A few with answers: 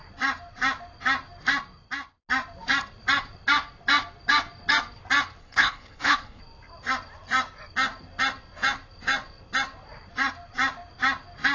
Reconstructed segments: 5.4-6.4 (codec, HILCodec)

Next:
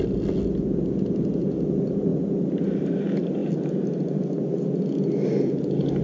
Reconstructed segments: none

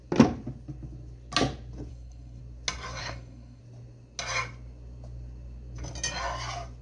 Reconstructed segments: 1.9-2.4 (codec, SNAC); 3.0-3.6

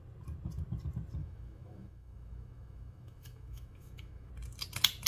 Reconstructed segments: 1.2-4.3 (autoencoder, DAC-VAE)

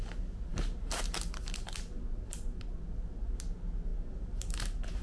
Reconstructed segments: none